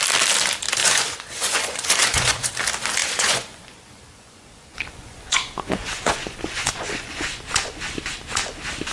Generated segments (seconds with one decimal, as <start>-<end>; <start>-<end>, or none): 0.8-2.5; 3.0-7.8